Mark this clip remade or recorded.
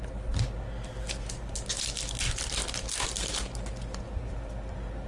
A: recorded